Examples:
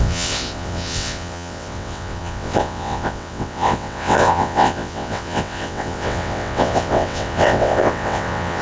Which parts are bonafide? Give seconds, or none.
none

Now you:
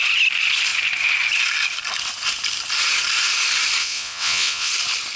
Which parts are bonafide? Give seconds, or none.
0.0-3.8; 4.7-5.2